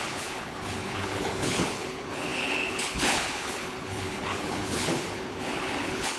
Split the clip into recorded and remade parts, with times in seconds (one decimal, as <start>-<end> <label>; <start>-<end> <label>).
0.0-6.2 remade